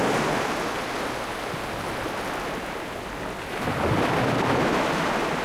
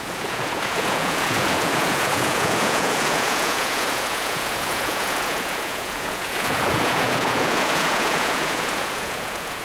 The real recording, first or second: first